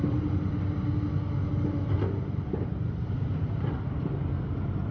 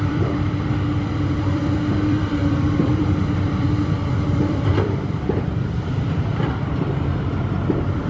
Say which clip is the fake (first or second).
second